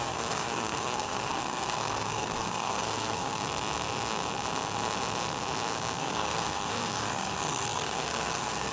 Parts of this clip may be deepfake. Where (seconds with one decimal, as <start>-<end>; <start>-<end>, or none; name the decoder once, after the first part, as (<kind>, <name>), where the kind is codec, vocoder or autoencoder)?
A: 0.0-3.4 (codec, SNAC); 6.0-8.7